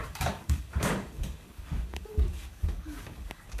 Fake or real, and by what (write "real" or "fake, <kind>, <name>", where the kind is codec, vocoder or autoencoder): fake, codec, DAC